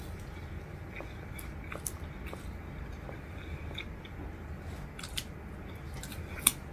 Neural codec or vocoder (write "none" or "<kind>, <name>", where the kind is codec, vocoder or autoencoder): none